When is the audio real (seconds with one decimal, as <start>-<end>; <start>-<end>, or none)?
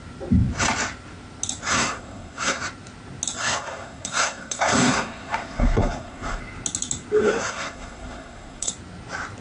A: 0.0-1.7; 2.6-3.4; 6.4-7.2; 8.7-9.4